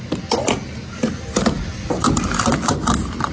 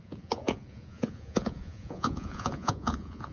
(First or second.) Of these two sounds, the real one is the first